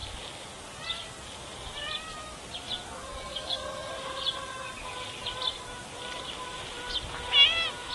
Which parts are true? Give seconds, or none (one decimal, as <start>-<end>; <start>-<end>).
0.0-3.1; 3.9-7.9